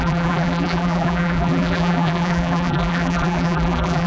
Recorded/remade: remade